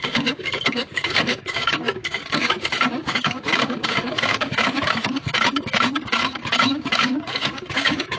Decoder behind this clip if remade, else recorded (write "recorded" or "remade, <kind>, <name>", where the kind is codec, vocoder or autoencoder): remade, codec, DAC